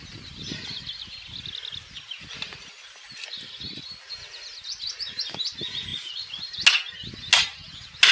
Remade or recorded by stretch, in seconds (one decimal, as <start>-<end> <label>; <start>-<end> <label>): 0.0-8.1 recorded